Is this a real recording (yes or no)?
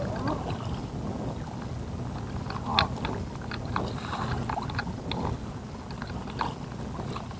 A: yes